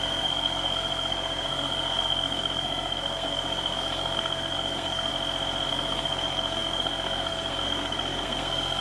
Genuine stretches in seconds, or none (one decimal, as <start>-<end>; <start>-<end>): 5.1-5.7

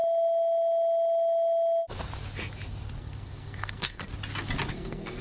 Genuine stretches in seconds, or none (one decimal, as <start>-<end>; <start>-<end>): 0.0-3.0; 4.1-4.7

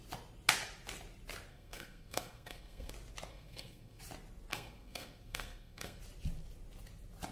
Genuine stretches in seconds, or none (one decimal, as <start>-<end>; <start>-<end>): 0.0-1.5; 2.9-3.3; 4.0-4.5; 6.0-7.3

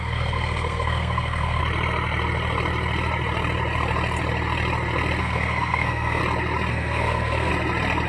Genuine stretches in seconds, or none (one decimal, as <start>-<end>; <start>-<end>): 1.6-5.2; 6.2-6.7; 7.5-8.1

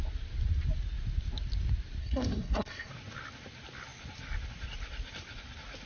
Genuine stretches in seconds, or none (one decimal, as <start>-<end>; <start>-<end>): 0.0-2.0; 2.9-5.9